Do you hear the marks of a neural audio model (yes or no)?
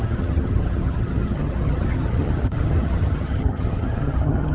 yes